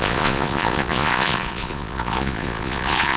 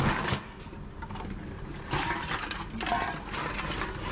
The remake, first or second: first